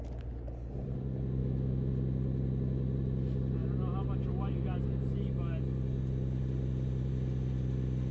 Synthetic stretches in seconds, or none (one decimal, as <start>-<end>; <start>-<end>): 1.4-1.9